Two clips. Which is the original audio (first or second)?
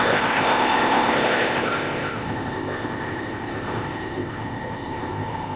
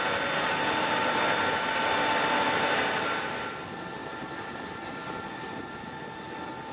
second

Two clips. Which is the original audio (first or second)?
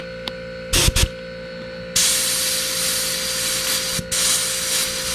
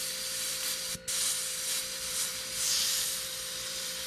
first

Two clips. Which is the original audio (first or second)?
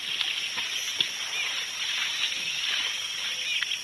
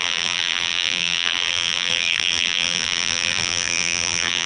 first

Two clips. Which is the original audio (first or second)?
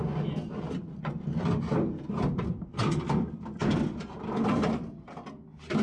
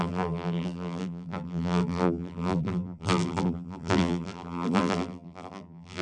first